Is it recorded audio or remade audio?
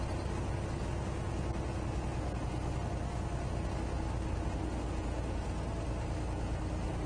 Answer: recorded